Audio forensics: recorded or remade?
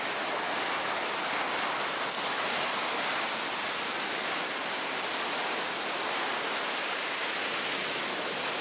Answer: recorded